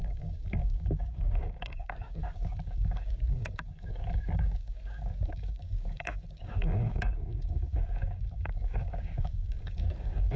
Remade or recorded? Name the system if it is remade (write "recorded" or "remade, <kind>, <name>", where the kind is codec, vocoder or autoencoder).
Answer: remade, codec, DAC